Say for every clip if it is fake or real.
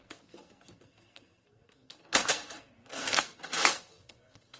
fake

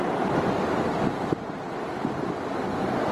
real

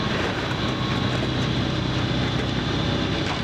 real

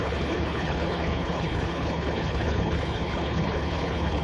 fake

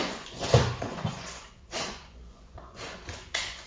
fake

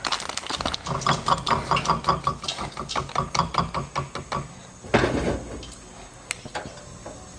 real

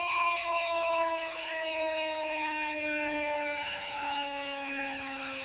fake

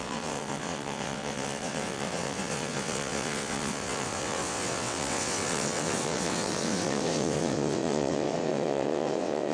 fake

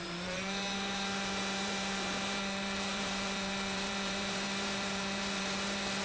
fake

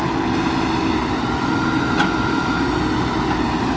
real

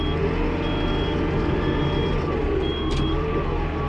real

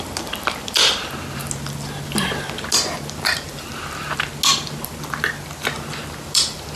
real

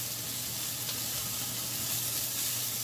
real